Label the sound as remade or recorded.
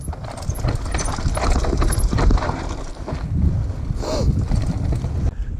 recorded